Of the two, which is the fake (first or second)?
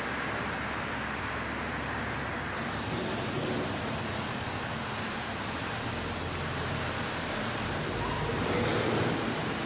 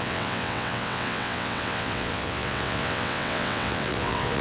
second